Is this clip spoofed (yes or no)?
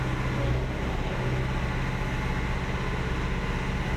no